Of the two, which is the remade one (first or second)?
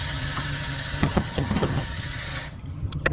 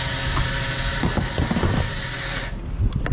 first